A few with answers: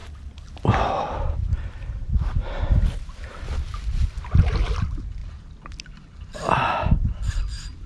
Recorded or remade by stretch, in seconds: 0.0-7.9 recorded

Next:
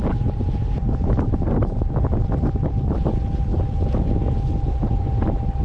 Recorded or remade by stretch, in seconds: 0.0-5.6 recorded

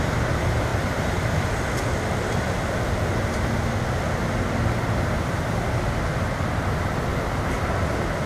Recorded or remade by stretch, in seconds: 0.0-8.3 recorded

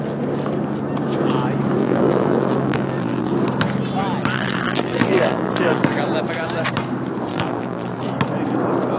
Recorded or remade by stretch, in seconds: 0.0-1.8 recorded; 1.8-3.3 remade; 3.3-4.3 recorded; 4.3-5.8 remade; 5.8-7.3 recorded; 7.3-8.0 remade; 8.0-9.0 recorded

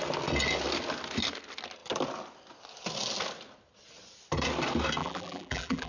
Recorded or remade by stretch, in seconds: 0.0-5.0 recorded; 5.0-5.9 remade

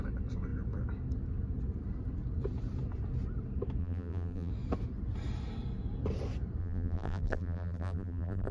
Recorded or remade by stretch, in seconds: 0.0-3.8 recorded; 3.8-4.5 remade; 4.5-6.6 recorded; 6.6-8.5 remade

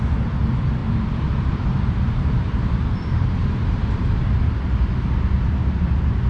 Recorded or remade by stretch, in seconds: 0.0-0.8 recorded; 0.8-4.6 remade; 4.6-6.3 recorded

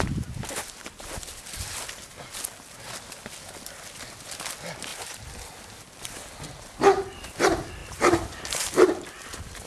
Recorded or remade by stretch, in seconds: 0.0-4.9 recorded; 4.9-6.8 remade; 6.8-7.8 recorded; 7.8-8.7 remade; 8.7-9.7 recorded